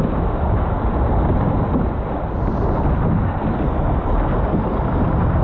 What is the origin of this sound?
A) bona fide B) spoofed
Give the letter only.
A